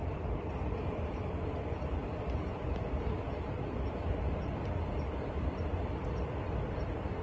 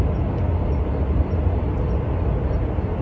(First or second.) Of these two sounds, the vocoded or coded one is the first